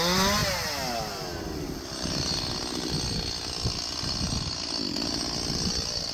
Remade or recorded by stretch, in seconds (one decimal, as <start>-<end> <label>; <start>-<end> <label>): 0.0-6.1 recorded